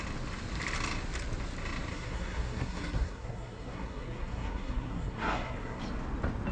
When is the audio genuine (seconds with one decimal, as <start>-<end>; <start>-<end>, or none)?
0.0-1.9; 5.8-6.5